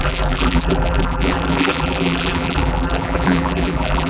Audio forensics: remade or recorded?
remade